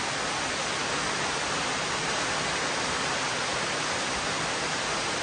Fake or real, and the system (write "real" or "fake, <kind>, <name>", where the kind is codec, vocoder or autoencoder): real